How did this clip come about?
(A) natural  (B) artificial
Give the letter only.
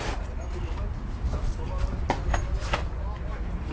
A